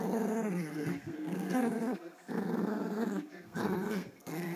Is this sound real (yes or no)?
no